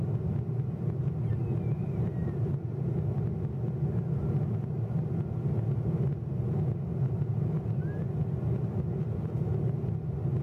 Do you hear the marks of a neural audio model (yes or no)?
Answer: no